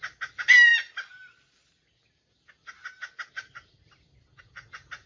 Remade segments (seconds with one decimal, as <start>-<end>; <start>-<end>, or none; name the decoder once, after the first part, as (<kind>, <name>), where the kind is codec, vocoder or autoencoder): none